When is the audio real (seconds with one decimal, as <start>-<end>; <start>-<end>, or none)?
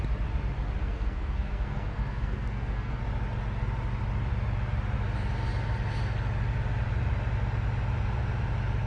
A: 0.0-0.8; 3.0-8.9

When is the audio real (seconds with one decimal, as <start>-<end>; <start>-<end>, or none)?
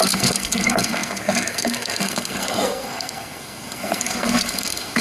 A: none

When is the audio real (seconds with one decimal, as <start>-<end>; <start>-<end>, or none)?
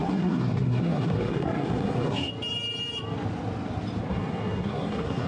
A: 2.3-4.1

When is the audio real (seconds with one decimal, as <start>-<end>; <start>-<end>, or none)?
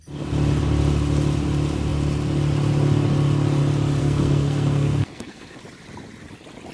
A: 0.0-4.0; 5.6-6.7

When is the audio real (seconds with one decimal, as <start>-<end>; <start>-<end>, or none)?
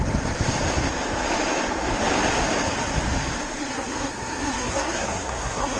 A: 0.0-3.6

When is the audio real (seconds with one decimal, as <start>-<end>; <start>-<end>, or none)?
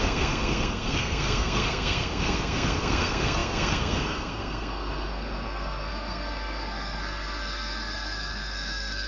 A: none